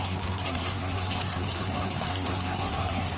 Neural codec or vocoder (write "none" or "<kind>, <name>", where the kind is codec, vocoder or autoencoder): codec, SNAC